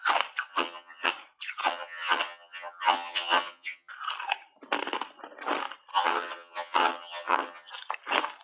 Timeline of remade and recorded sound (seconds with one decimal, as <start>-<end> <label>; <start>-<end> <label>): 0.0-0.5 recorded; 0.5-1.1 remade; 1.1-1.6 recorded; 1.6-3.9 remade; 3.9-5.9 recorded; 5.9-7.7 remade; 7.7-8.4 recorded